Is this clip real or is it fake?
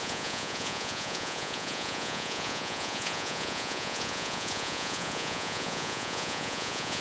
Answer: fake